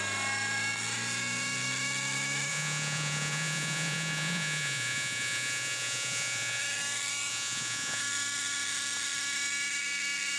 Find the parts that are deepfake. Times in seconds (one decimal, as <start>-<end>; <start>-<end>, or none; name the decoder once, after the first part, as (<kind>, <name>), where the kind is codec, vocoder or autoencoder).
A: 2.5-6.6 (vocoder, Vocos); 7.3-8.0